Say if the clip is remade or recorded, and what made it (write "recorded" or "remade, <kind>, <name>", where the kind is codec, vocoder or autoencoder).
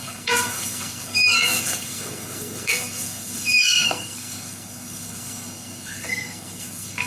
remade, codec, SNAC